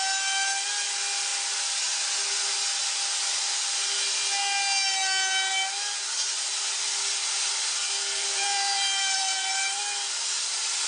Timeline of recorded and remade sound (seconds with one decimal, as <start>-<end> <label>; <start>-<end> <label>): 0.0-1.3 recorded; 1.3-1.8 remade; 1.8-7.8 recorded; 7.8-9.8 remade; 9.8-10.9 recorded